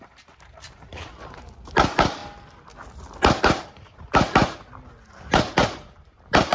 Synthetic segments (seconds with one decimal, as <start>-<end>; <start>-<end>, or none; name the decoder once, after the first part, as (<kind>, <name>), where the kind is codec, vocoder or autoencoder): 0.0-2.2 (vocoder, BigVGAN v2); 3.4-4.4; 5.6-6.5